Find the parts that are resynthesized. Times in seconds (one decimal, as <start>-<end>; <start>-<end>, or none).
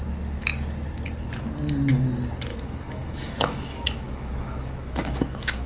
2.5-5.7